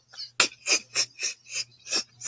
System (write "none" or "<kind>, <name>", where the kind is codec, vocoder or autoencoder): none